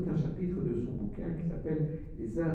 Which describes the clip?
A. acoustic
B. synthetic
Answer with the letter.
B